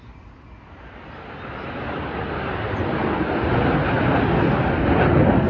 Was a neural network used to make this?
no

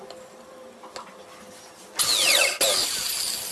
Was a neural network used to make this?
no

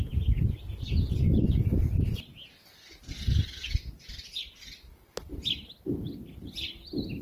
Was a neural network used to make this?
no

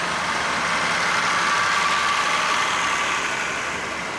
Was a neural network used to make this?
no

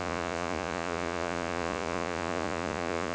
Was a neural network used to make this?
yes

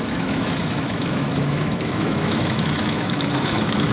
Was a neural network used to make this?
yes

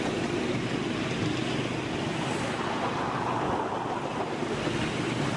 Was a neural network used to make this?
no